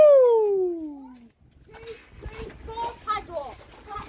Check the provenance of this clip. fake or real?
real